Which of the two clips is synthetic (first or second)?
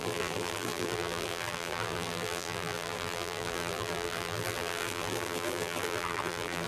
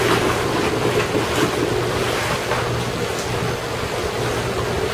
first